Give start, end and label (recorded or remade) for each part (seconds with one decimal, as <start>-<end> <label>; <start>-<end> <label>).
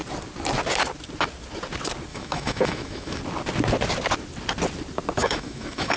0.0-2.1 recorded; 2.1-3.2 remade; 3.2-5.2 recorded; 5.2-6.0 remade